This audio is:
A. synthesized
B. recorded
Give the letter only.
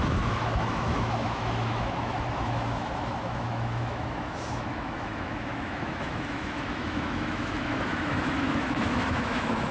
A